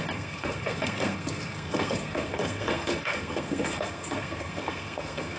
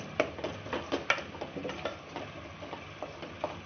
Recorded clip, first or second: second